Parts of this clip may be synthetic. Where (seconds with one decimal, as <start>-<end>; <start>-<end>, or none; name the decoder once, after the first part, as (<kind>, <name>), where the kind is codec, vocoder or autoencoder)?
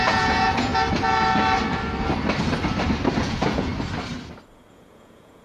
0.0-0.7 (vocoder, Vocos); 3.2-3.7; 4.7-5.4